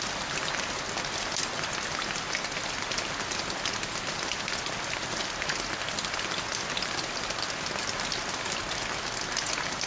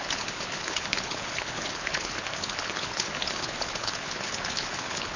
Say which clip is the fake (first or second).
second